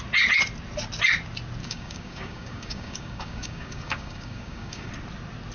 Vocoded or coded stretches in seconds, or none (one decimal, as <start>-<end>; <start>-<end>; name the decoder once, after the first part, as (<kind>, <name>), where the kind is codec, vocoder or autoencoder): 1.6-4.9 (codec, DAC)